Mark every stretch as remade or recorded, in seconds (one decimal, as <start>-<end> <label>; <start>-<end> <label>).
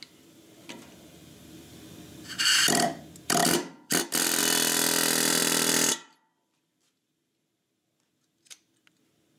0.0-3.4 recorded; 3.4-4.4 remade; 4.4-5.4 recorded; 5.4-6.8 remade; 6.8-9.4 recorded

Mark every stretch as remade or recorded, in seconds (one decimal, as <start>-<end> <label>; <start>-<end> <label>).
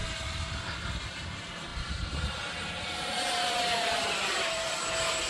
0.0-1.0 recorded; 1.0-5.3 remade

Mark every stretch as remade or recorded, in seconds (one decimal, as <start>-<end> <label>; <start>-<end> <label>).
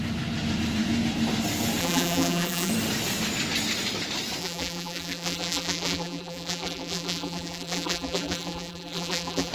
0.0-1.8 recorded; 1.8-2.7 remade; 2.7-4.4 recorded; 4.4-9.5 remade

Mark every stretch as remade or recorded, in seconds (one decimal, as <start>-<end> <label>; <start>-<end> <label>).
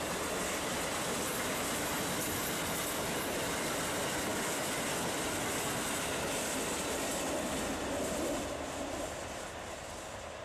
0.0-10.4 recorded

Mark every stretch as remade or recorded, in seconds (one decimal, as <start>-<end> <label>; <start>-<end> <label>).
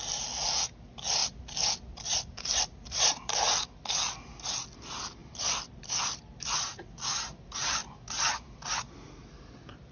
0.0-1.2 recorded; 1.2-3.6 remade; 3.6-5.2 recorded; 5.2-6.0 remade; 6.0-9.9 recorded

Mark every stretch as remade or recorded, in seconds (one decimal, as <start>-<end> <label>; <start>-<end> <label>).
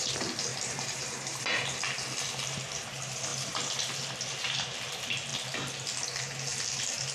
0.0-0.5 recorded; 0.5-1.4 remade; 1.4-7.1 recorded